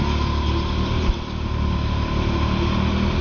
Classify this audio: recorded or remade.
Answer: recorded